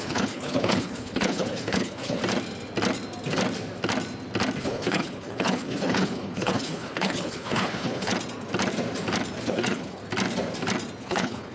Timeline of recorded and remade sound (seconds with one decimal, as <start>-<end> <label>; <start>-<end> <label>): 0.0-2.2 remade; 2.2-4.6 recorded; 4.6-8.1 remade; 8.1-9.4 recorded; 9.4-10.0 remade; 10.0-11.0 recorded; 11.0-11.5 remade